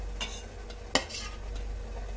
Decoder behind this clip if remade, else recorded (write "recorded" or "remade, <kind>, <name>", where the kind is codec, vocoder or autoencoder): recorded